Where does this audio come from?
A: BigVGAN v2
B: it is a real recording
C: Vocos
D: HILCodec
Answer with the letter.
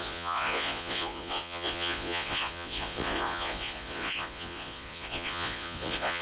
C